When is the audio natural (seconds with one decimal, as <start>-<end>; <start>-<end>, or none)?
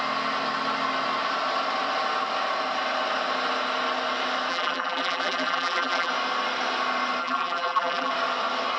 0.0-4.5; 6.1-7.2; 8.1-8.8